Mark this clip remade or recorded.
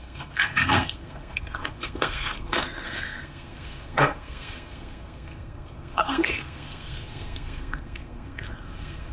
remade